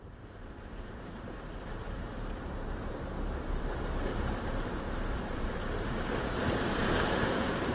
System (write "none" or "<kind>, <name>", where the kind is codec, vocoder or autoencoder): vocoder, BigVGAN v2